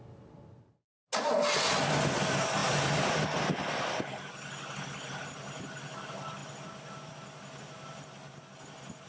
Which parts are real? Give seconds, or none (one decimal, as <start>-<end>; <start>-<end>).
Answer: 0.0-9.1